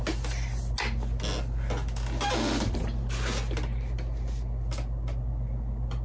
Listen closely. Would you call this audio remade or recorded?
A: recorded